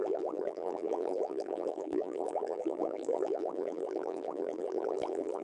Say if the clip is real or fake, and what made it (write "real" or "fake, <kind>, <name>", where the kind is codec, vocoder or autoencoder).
fake, vocoder, BigVGAN v2